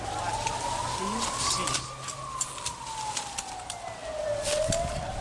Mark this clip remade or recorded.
recorded